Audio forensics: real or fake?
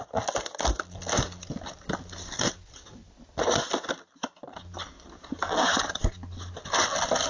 real